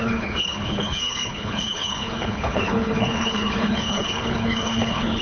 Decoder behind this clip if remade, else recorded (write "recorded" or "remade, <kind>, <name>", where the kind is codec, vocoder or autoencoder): remade, codec, HILCodec